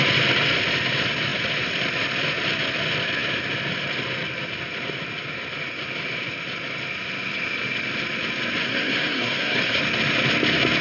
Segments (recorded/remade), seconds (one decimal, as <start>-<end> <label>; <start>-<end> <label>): 0.0-8.6 recorded; 8.6-9.8 remade; 9.8-10.8 recorded